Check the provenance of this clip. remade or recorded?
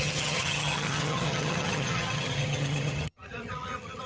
remade